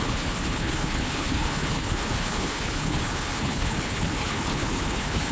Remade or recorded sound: remade